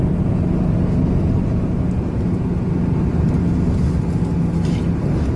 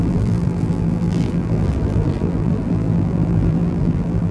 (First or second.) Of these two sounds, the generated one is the second